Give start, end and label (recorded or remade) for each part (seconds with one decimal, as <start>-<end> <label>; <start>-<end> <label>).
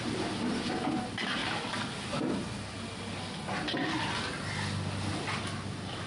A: 0.0-1.4 recorded; 1.4-2.4 remade; 2.4-6.1 recorded